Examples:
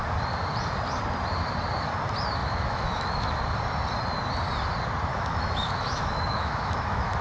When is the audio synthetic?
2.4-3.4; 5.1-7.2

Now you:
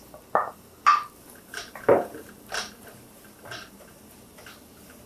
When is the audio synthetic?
0.9-4.0

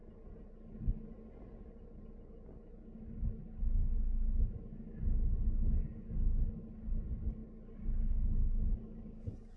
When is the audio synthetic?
none

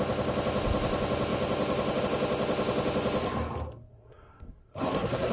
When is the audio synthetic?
3.9-5.3